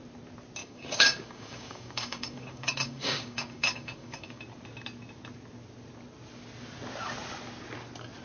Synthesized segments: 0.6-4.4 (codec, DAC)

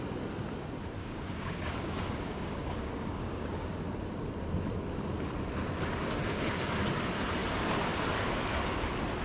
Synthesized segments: 1.0-3.7 (codec, DAC)

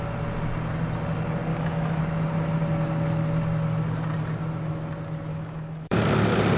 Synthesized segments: 1.5-2.0 (codec, DAC); 5.3-6.0